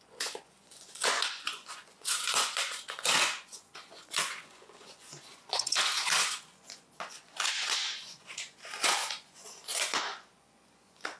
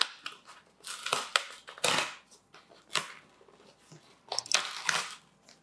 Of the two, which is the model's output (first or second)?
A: first